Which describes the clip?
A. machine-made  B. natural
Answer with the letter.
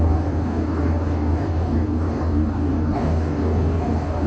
A